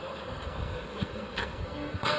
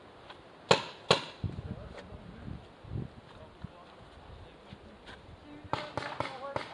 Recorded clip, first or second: second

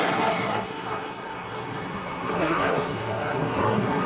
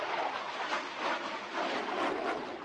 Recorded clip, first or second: second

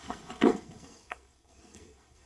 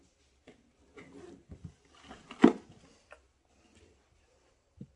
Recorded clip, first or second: second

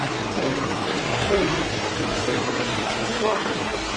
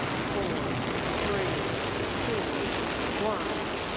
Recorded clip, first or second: second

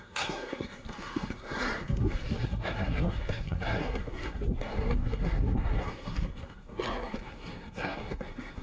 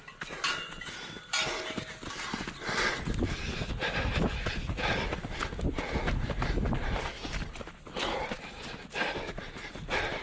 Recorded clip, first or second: second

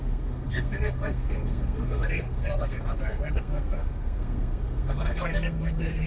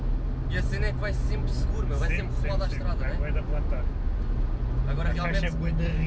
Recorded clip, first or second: second